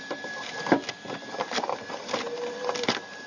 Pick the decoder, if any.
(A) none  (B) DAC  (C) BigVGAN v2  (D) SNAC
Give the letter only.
A